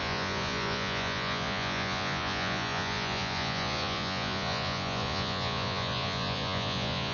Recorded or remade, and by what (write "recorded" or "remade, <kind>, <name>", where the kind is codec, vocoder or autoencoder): remade, vocoder, Vocos